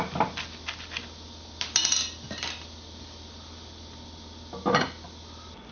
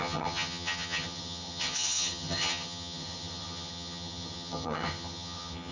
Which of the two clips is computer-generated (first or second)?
second